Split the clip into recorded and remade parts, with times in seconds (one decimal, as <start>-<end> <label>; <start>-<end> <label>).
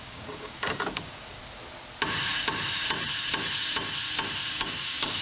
0.0-1.4 remade; 1.4-4.5 recorded; 4.5-5.2 remade